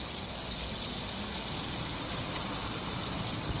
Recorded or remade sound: recorded